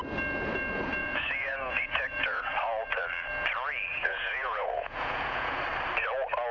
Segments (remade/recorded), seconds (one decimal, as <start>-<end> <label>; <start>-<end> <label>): 0.0-1.0 recorded; 1.0-2.4 remade; 2.4-3.9 recorded; 3.9-5.6 remade; 5.6-6.5 recorded